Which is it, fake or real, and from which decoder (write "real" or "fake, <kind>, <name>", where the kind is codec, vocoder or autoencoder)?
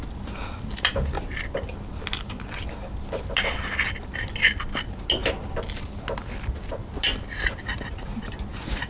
real